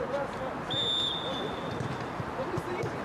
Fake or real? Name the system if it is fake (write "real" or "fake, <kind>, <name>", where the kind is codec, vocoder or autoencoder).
real